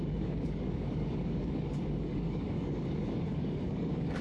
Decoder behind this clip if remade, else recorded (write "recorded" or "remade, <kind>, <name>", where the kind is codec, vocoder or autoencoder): remade, codec, DAC